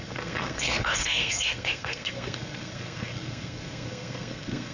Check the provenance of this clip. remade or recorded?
remade